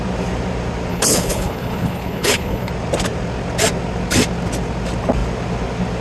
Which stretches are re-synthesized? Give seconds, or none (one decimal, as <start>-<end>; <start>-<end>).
0.9-2.7